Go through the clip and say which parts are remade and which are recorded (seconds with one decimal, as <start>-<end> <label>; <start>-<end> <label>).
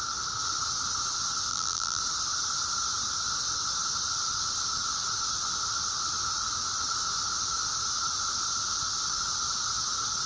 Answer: 0.0-1.5 recorded; 1.5-2.0 remade; 2.0-10.3 recorded